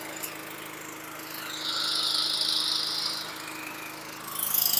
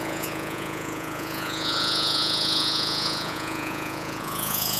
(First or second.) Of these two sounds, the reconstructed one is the second